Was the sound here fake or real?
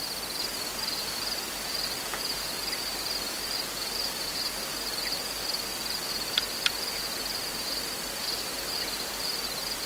real